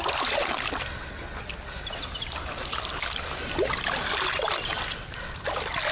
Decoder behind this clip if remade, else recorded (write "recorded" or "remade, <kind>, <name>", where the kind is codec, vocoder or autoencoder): recorded